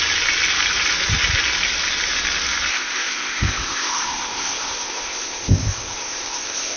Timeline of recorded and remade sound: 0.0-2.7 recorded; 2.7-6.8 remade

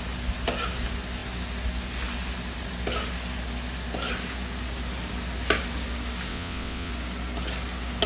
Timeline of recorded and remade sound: 0.0-6.3 recorded; 6.3-6.9 remade; 6.9-8.1 recorded

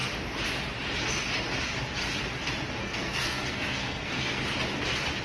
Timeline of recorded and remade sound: 0.0-2.8 recorded; 2.8-4.4 remade; 4.4-5.2 recorded

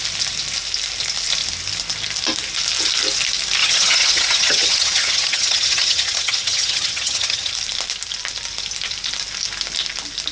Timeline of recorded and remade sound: 0.0-3.6 recorded; 3.6-7.5 remade; 7.5-10.3 recorded

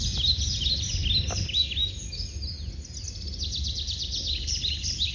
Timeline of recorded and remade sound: 0.0-5.1 recorded

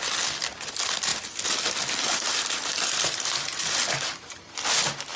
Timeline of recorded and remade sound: 0.0-5.2 recorded